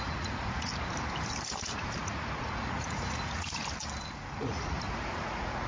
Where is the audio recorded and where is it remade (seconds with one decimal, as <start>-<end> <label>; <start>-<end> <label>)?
0.0-0.7 remade; 0.7-1.6 recorded; 1.6-3.6 remade; 3.6-4.1 recorded; 4.1-5.7 remade